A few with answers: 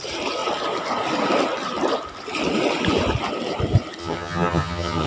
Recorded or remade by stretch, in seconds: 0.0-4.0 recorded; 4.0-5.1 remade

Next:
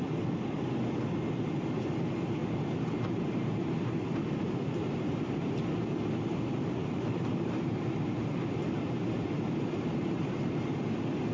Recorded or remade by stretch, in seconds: 0.0-2.4 recorded; 2.4-5.6 remade; 5.6-6.8 recorded; 6.8-10.5 remade; 10.5-11.3 recorded

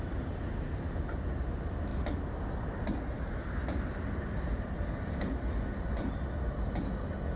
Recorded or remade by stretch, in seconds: 0.0-7.4 recorded

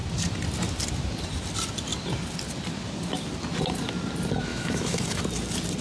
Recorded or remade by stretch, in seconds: 0.0-4.5 recorded; 4.5-5.2 remade; 5.2-5.8 recorded